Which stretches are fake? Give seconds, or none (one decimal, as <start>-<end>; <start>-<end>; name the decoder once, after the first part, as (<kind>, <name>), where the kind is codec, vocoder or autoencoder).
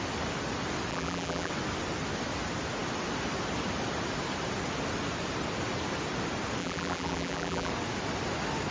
0.9-1.5 (vocoder, BigVGAN v2); 6.6-7.7